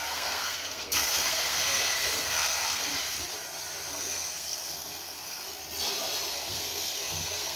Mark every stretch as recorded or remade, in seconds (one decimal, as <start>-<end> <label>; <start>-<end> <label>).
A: 0.0-2.9 remade; 2.9-3.9 recorded; 3.9-5.6 remade; 5.6-6.3 recorded; 6.3-7.6 remade

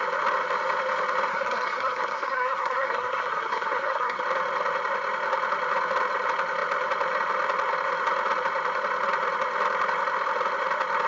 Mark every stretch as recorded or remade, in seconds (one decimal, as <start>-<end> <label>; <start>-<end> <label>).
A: 0.0-1.3 recorded; 1.3-4.2 remade; 4.2-11.1 recorded

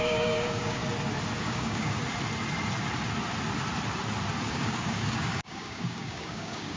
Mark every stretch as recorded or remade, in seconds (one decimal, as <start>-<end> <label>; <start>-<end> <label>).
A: 0.0-0.8 remade; 0.8-1.4 recorded; 1.4-2.0 remade; 2.0-4.5 recorded; 4.5-6.8 remade

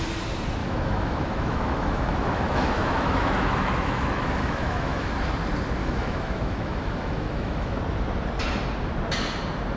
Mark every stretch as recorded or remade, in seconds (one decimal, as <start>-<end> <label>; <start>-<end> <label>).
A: 0.0-0.6 recorded; 0.6-5.1 remade; 5.1-5.8 recorded; 5.8-7.8 remade; 7.8-9.8 recorded